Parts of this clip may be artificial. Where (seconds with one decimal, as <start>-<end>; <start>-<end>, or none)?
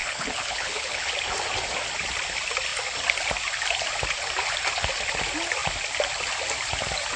0.0-1.1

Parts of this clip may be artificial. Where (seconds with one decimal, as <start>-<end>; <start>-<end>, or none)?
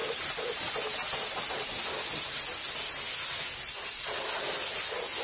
none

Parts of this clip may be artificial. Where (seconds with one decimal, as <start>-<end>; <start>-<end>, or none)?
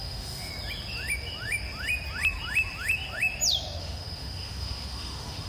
0.0-0.5; 3.8-5.5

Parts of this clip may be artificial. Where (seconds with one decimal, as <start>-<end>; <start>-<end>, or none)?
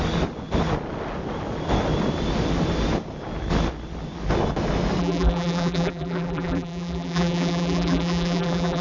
5.0-8.8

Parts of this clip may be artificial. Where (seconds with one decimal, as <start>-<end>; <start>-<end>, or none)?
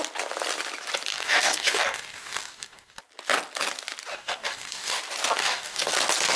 1.1-3.0; 4.1-5.0; 5.4-5.9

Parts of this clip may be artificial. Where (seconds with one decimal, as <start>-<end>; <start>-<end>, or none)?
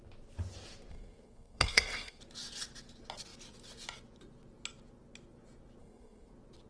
0.9-2.2; 5.8-6.3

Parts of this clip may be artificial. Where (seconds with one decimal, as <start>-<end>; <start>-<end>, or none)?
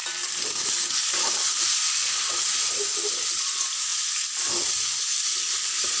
none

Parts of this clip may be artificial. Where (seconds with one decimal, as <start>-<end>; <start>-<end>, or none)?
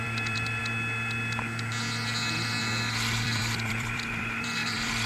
0.0-0.6; 2.6-5.1